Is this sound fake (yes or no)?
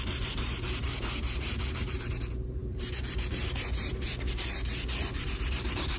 yes